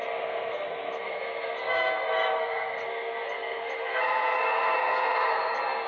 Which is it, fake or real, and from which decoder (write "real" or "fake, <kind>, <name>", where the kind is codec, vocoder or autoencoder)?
fake, codec, SNAC